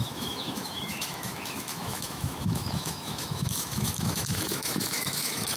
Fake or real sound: fake